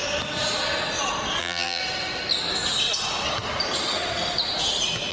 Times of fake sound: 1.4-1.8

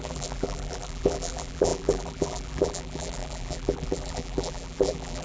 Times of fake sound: 0.0-5.2

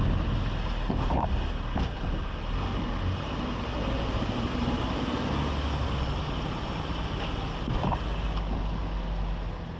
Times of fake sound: 3.7-4.8

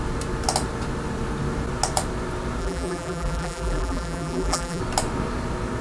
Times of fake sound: 2.6-4.8